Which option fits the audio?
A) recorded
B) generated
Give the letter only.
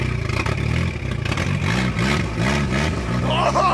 A